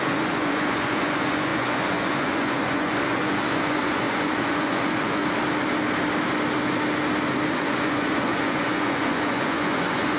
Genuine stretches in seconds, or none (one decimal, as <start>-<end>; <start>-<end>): 5.2-7.5